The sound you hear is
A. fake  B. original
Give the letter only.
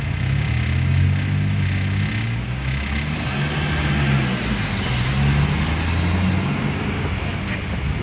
B